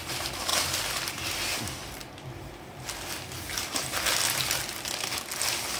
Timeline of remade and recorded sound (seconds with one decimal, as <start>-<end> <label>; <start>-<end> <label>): 0.0-5.8 recorded